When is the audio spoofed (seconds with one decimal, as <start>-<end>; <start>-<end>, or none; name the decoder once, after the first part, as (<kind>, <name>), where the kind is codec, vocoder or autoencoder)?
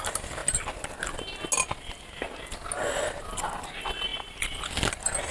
none